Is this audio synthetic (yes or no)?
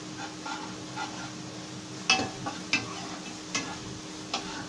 no